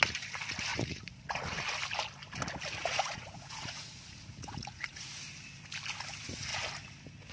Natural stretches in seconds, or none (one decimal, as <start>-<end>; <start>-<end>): 0.0-0.7; 1.7-2.8; 5.2-7.3